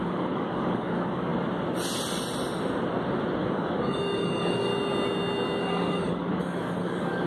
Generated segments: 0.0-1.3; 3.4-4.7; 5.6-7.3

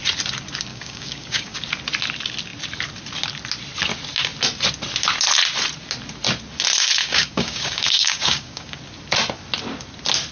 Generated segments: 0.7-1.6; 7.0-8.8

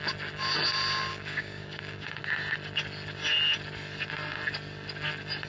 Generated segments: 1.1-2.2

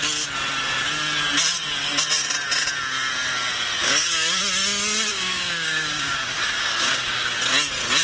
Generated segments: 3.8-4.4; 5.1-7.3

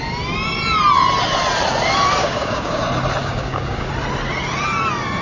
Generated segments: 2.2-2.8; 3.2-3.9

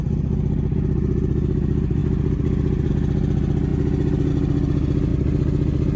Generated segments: none

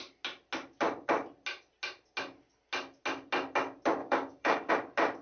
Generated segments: 4.0-4.7